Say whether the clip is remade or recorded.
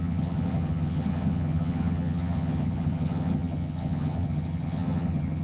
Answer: remade